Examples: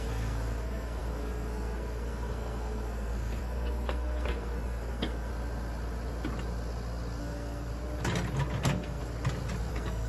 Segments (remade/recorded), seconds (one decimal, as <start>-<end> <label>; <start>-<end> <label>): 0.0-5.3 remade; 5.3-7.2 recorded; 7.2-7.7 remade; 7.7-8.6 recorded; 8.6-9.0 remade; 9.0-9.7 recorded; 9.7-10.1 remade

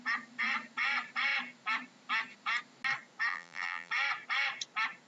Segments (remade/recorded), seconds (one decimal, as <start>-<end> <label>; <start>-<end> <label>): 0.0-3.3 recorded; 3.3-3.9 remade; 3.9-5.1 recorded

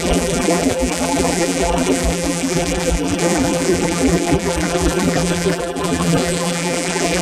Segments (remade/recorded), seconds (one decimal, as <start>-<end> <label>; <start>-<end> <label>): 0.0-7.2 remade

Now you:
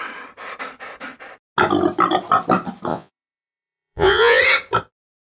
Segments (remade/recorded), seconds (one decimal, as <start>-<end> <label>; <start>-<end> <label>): 0.0-2.9 recorded; 2.9-4.4 remade; 4.4-5.2 recorded

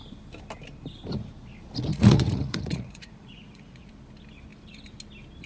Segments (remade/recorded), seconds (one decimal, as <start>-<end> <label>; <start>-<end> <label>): 0.0-1.9 recorded; 1.9-3.9 remade; 3.9-5.5 recorded